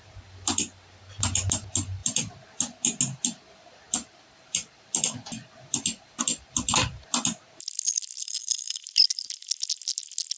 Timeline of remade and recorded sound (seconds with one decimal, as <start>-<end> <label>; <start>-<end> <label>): 0.0-8.2 recorded; 8.2-8.8 remade; 8.8-10.4 recorded